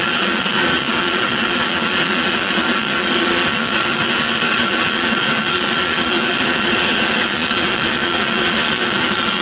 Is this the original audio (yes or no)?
no